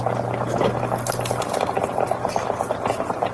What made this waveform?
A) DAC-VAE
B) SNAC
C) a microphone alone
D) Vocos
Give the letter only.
C